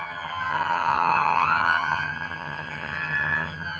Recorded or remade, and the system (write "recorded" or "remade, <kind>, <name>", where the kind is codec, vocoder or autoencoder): remade, vocoder, HiFi-GAN